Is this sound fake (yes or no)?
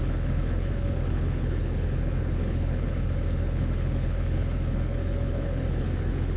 yes